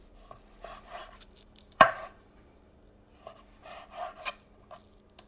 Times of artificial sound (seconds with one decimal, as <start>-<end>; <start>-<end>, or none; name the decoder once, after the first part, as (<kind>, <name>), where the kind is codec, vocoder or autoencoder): 1.0-3.6 (vocoder, BigVGAN v2)

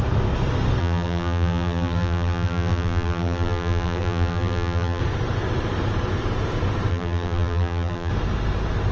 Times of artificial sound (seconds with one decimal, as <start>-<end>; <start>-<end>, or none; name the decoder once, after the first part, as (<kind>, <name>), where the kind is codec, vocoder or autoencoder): 0.8-5.0 (vocoder, BigVGAN v2); 6.9-8.1

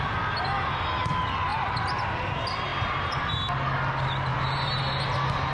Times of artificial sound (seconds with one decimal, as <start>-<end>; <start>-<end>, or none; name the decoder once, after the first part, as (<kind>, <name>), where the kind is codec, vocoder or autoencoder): 2.7-3.3 (vocoder, BigVGAN v2); 4.3-4.8

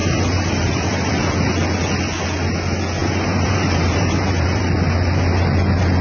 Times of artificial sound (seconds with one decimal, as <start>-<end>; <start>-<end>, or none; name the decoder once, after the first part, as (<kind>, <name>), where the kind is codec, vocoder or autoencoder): 0.0-1.1 (vocoder, BigVGAN v2); 3.0-4.6